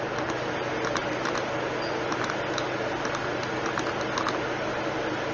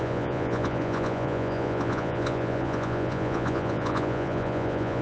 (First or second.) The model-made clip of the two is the second